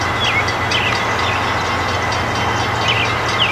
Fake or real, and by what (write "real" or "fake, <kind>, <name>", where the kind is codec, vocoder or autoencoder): real